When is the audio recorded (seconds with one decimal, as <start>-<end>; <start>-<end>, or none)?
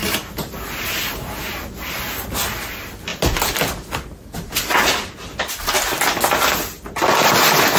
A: 0.0-7.8